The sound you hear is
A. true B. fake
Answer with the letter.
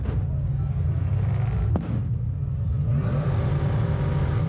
A